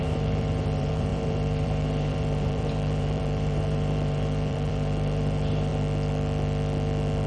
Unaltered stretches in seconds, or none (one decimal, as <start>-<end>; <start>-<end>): 5.7-7.3